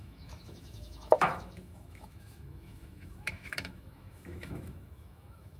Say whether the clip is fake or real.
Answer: fake